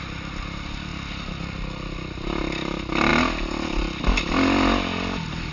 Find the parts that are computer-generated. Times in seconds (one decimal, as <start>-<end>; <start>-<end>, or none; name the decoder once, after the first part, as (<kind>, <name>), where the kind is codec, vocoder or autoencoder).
none